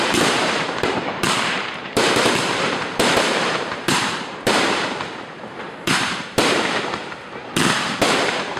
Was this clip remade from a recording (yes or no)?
yes